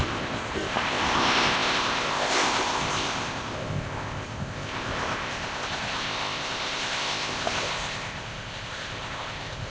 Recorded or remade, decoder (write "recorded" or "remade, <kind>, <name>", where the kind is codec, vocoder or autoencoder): remade, codec, ZipCodec